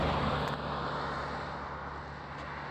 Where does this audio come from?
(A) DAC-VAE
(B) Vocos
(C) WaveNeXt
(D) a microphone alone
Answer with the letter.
D